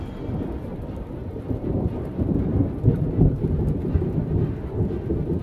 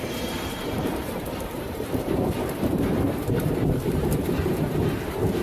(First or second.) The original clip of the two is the first